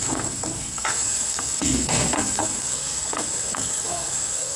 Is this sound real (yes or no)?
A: no